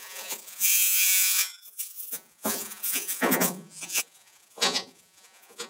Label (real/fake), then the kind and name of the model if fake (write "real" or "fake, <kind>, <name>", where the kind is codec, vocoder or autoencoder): fake, vocoder, Vocos